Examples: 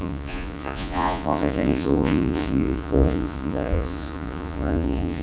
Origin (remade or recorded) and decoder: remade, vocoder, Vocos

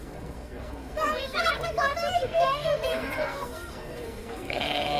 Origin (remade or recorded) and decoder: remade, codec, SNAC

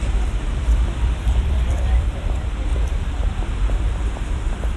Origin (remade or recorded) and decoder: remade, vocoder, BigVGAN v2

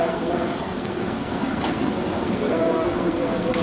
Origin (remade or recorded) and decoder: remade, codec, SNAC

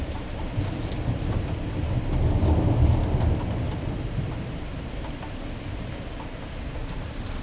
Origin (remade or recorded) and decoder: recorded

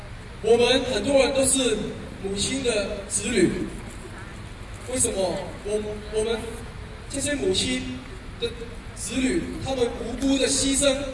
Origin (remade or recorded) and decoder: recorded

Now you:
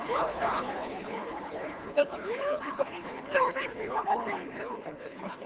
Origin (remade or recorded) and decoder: remade, codec, HILCodec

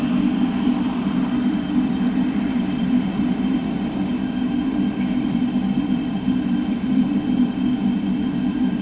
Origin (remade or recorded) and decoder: remade, vocoder, BigVGAN v2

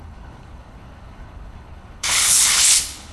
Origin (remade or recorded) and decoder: remade, codec, HILCodec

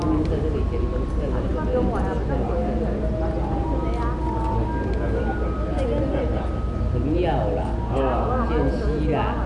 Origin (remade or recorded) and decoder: recorded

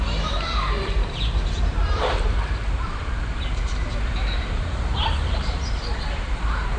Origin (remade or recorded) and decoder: remade, vocoder, BigVGAN v2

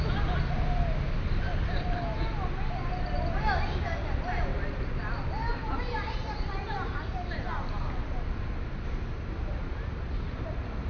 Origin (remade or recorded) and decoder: recorded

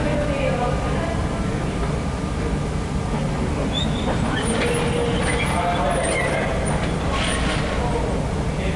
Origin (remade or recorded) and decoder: recorded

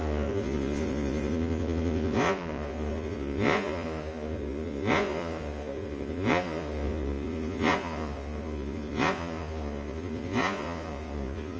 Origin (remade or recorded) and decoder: remade, vocoder, Vocos